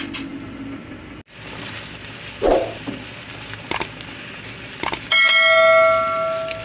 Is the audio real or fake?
real